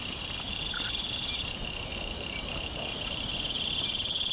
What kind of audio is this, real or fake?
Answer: fake